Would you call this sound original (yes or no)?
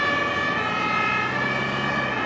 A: yes